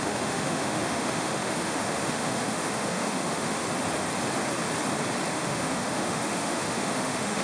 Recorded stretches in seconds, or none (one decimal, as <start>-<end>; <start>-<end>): 3.6-5.3